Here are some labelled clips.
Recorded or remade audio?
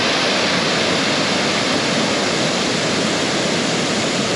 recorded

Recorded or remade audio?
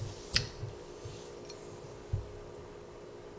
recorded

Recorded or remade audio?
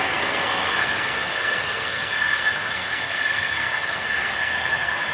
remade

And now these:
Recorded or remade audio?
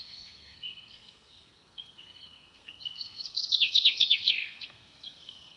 remade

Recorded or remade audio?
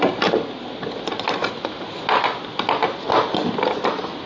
recorded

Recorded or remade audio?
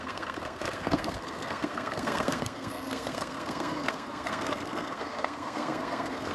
remade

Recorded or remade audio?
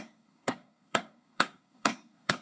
remade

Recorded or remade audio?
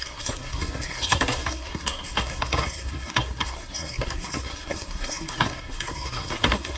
remade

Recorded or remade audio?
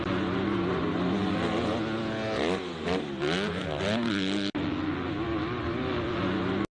recorded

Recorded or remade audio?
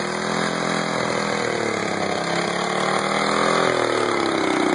recorded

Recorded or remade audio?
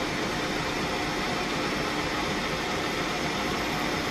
recorded